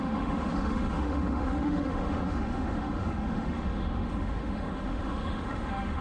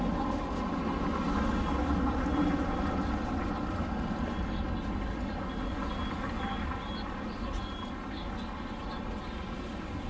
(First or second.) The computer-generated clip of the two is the first